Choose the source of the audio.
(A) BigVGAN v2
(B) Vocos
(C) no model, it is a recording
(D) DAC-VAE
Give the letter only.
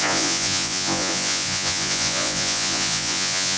B